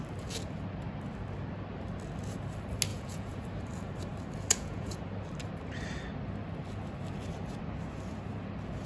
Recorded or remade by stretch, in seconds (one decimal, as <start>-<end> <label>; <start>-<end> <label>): 0.0-2.9 recorded; 2.9-3.4 remade; 3.4-4.5 recorded; 4.5-5.0 remade; 5.0-8.9 recorded